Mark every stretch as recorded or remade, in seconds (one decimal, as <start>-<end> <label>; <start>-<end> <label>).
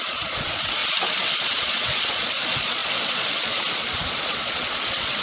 0.0-0.8 remade; 0.8-1.3 recorded; 1.3-5.2 remade